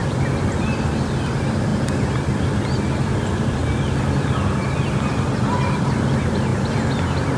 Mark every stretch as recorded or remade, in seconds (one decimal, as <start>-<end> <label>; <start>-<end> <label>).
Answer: 0.0-7.4 recorded